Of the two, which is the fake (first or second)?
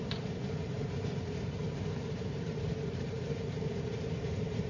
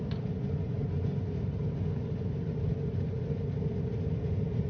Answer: first